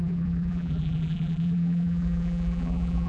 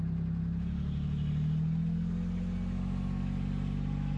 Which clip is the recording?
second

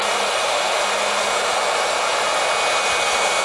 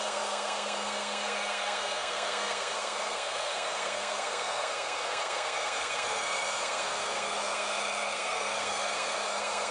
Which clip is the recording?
first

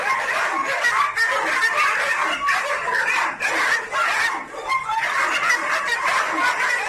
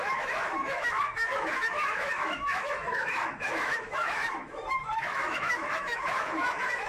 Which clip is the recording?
first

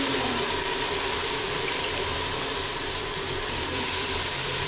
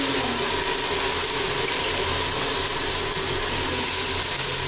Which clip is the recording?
second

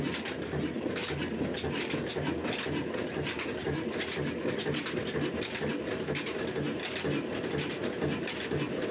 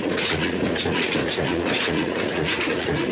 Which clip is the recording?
first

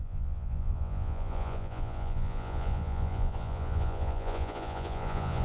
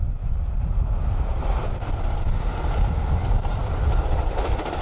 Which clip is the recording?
second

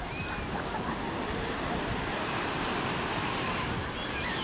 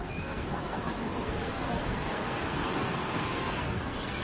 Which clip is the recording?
first